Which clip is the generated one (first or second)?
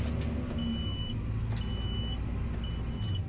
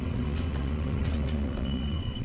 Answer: second